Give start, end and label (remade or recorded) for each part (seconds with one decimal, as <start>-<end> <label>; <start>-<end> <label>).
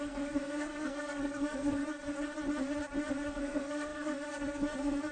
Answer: 0.0-1.8 remade; 1.8-3.3 recorded; 3.3-5.1 remade